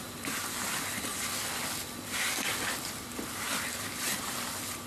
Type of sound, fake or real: real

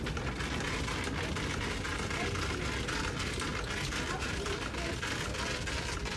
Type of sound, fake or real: real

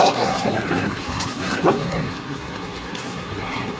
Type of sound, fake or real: fake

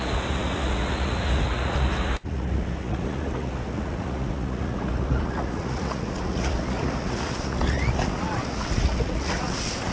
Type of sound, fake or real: fake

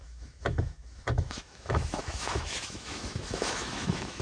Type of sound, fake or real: fake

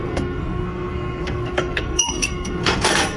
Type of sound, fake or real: fake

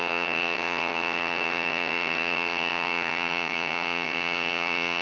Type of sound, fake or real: fake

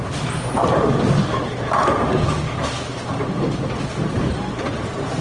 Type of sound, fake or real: real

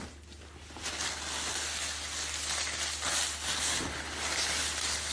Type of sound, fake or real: real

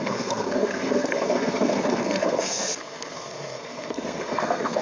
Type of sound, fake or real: fake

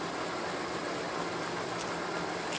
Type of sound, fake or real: real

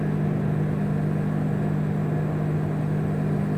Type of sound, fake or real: real